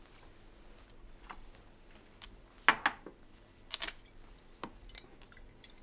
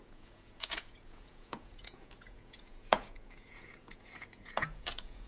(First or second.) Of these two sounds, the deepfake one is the second